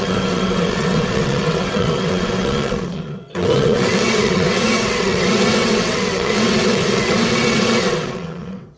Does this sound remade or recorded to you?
remade